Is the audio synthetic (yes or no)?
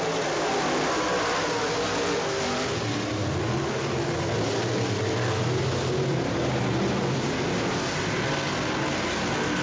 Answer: no